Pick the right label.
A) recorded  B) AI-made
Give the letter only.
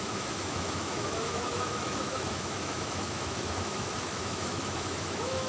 B